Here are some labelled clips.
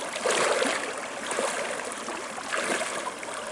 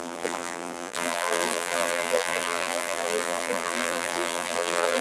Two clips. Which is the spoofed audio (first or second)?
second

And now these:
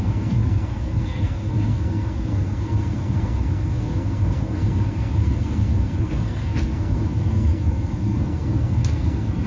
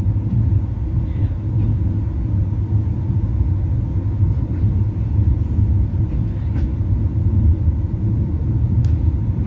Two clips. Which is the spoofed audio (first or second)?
first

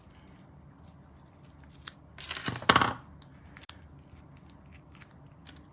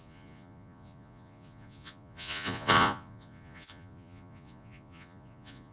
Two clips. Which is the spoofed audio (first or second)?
second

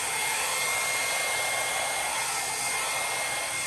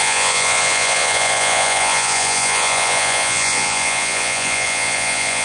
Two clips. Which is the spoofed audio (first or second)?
second